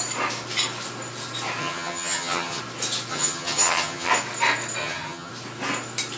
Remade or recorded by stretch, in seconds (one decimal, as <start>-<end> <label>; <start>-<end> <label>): 0.0-1.6 recorded; 1.6-2.6 remade; 2.6-3.1 recorded; 3.1-4.1 remade; 4.1-4.8 recorded; 4.8-5.3 remade; 5.3-6.2 recorded